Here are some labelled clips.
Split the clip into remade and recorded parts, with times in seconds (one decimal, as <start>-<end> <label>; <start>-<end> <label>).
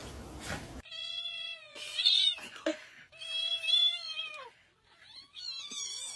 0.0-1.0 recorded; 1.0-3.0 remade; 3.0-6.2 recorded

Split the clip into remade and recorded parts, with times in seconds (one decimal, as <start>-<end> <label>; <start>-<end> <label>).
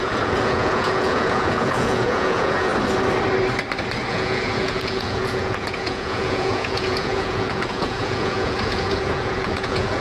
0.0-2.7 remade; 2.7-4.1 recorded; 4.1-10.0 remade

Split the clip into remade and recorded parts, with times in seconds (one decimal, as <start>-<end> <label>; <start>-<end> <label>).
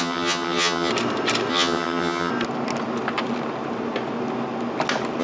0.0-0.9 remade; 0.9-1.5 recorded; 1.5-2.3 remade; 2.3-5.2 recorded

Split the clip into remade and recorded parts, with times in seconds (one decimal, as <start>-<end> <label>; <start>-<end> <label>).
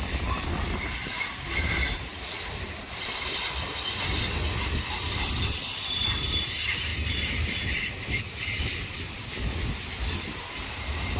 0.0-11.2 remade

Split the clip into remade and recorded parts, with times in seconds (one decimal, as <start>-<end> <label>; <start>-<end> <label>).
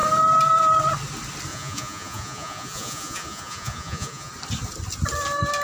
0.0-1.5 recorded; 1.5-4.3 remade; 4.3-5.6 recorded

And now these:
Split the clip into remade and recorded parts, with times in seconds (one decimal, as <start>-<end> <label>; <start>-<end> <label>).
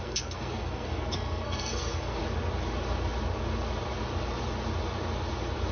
0.0-2.2 remade; 2.2-5.7 recorded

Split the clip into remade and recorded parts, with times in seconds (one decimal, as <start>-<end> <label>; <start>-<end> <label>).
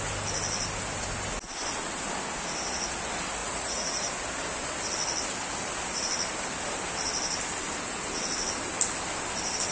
0.0-3.4 recorded; 3.4-4.1 remade; 4.1-9.7 recorded